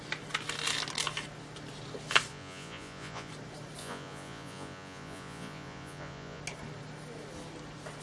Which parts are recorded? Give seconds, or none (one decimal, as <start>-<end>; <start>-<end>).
0.0-2.3; 3.3-3.8; 6.4-8.0